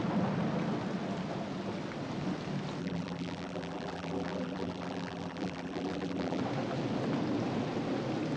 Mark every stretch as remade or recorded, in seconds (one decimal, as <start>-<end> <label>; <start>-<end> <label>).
0.0-2.8 recorded; 2.8-6.4 remade; 6.4-8.4 recorded